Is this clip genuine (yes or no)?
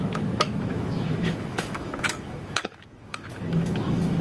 no